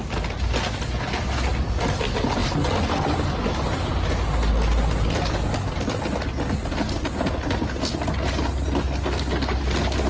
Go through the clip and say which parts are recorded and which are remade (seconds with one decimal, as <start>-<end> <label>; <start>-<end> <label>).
0.0-10.1 recorded